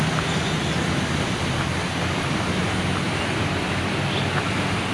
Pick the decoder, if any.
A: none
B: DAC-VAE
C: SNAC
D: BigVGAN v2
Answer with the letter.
A